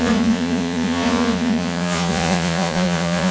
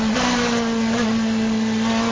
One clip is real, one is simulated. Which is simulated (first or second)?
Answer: first